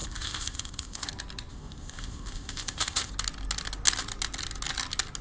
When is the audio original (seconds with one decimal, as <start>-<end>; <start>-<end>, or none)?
1.1-1.5; 3.1-5.2